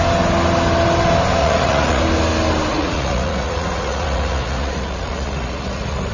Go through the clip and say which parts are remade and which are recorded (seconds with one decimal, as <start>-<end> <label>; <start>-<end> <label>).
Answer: 0.0-1.4 recorded; 1.4-2.0 remade; 2.0-2.7 recorded; 2.7-6.1 remade